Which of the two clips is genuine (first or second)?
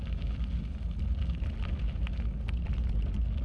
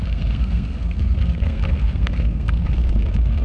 first